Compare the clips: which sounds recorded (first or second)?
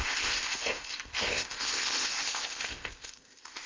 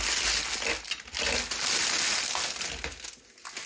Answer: second